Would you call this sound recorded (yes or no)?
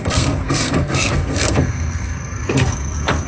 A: no